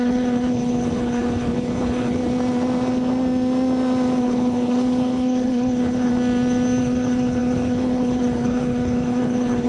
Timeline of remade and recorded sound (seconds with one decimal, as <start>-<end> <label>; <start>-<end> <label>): 0.0-2.2 remade; 2.2-4.2 recorded; 4.2-6.1 remade; 6.1-6.8 recorded; 6.8-9.7 remade